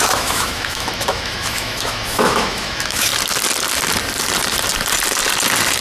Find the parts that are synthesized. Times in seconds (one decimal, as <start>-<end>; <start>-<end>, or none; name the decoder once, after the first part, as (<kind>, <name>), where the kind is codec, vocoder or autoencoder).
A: 0.0-3.1 (autoencoder, DAC-VAE)